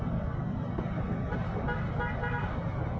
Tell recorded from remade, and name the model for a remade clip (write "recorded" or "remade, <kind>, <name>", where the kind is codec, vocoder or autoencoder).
recorded